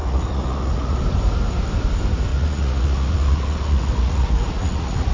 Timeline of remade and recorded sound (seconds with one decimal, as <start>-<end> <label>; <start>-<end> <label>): 0.0-1.0 remade; 1.0-2.3 recorded; 2.3-5.1 remade